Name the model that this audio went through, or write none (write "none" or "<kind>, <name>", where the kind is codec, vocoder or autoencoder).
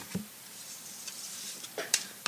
vocoder, BigVGAN v2